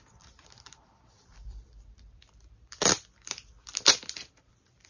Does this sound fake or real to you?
fake